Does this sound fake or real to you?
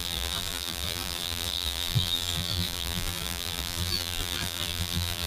fake